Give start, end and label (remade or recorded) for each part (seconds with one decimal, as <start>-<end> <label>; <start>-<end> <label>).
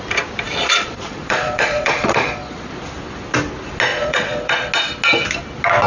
0.0-0.6 recorded; 0.6-2.7 remade; 2.7-3.9 recorded; 3.9-4.7 remade; 4.7-5.9 recorded